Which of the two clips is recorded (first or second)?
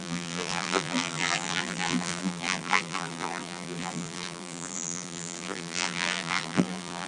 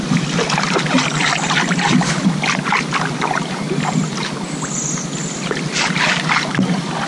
second